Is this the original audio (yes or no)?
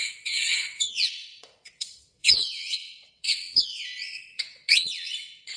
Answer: no